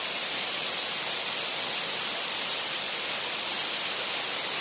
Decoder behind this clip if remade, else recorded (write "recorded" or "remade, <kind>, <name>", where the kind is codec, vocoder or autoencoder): recorded